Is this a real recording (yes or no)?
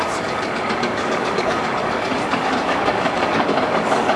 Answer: no